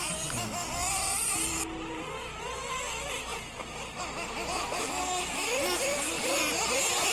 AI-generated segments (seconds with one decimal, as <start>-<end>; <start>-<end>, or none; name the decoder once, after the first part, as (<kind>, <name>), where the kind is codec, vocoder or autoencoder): none